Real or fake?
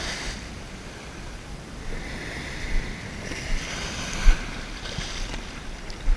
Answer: real